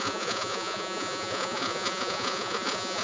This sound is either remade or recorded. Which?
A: remade